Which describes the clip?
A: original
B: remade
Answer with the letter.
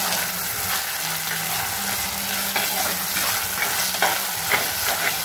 A